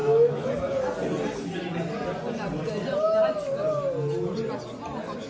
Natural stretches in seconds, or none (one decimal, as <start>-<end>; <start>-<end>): 0.5-5.3